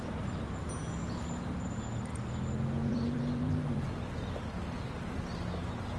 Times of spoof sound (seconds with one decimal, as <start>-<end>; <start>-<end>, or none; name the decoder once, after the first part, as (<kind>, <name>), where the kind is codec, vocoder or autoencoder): 2.8-5.2 (vocoder, BigVGAN v2)